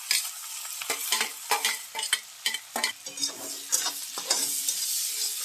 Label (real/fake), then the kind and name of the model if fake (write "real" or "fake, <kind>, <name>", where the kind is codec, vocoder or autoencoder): real